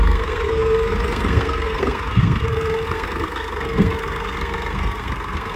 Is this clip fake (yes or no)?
yes